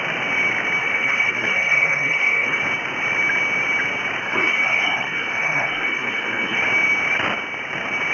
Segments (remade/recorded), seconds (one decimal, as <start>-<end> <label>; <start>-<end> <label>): 0.0-0.8 recorded; 0.8-2.6 remade; 2.6-4.2 recorded; 4.2-6.6 remade; 6.6-8.1 recorded

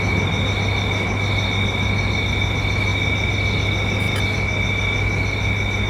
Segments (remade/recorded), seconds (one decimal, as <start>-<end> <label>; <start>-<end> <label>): 0.0-5.9 recorded

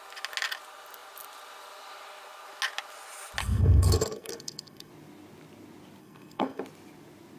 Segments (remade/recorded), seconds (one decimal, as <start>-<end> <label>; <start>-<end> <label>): 0.0-3.4 recorded; 3.4-4.9 remade; 4.9-6.0 recorded; 6.0-6.6 remade; 6.6-7.4 recorded